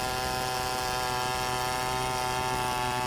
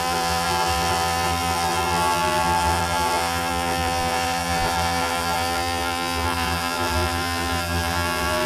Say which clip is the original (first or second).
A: first